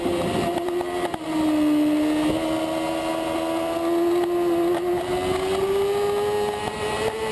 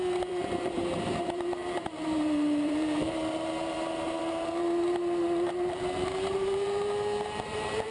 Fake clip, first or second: second